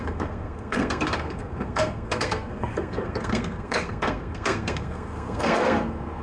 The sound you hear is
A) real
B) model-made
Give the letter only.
B